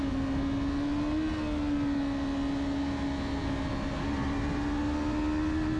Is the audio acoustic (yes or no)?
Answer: yes